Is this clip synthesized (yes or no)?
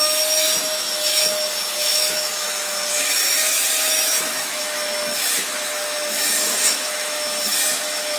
yes